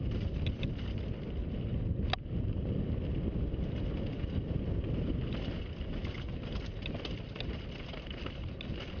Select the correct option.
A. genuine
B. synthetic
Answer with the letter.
A